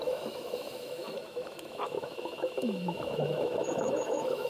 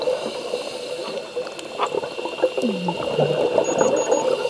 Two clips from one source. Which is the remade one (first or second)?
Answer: first